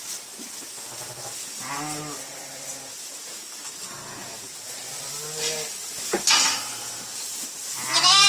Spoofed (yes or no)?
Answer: no